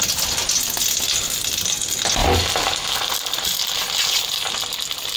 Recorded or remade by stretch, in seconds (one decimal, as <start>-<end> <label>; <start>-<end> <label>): 0.0-5.2 recorded